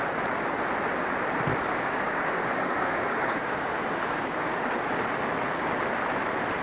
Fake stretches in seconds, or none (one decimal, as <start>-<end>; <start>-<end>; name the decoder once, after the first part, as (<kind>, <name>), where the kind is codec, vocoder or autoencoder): 1.6-4.7 (codec, DAC)